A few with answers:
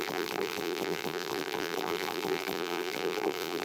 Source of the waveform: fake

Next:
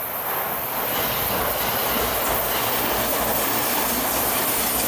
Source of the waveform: real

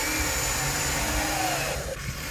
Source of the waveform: real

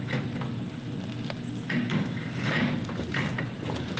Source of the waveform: real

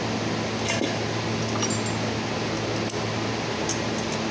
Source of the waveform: real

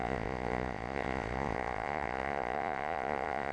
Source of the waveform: fake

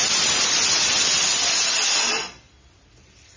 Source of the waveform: real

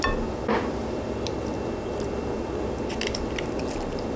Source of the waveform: real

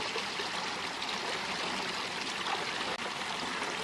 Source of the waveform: real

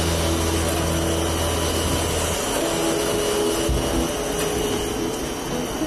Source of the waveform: real